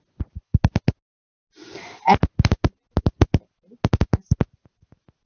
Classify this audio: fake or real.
real